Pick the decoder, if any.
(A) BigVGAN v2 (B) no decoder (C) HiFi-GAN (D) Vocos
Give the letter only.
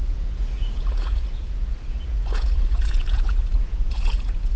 D